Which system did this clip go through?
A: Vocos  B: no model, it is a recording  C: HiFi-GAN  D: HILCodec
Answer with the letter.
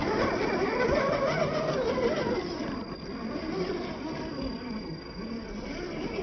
B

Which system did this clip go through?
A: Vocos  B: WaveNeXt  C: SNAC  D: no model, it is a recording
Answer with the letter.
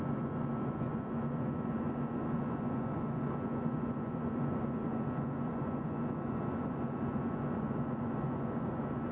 A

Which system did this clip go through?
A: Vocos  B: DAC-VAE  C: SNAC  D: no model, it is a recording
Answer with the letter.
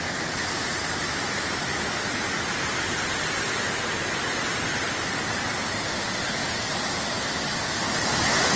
D